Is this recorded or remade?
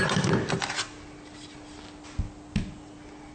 recorded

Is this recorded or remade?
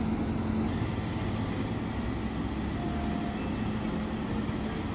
recorded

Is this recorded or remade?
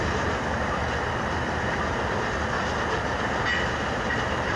recorded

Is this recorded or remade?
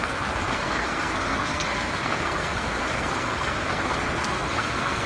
remade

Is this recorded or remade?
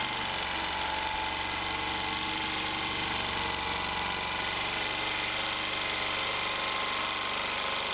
recorded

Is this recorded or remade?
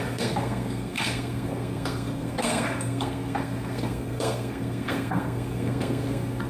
remade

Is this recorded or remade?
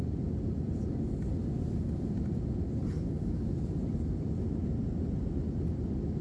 recorded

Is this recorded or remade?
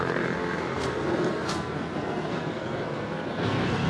remade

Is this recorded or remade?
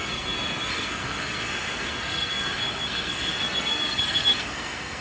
remade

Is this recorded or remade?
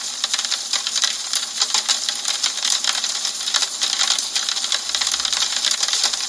recorded